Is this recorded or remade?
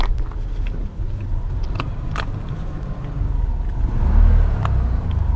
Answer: recorded